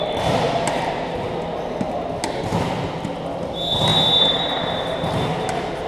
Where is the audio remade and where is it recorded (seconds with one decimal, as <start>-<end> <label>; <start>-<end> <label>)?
0.0-5.9 recorded